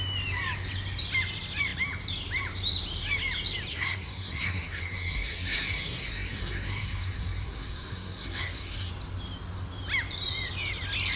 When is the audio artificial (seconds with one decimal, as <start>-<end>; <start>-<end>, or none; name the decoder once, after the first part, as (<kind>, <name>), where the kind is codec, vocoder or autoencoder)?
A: 3.7-8.9 (codec, SNAC)